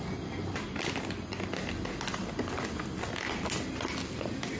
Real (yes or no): yes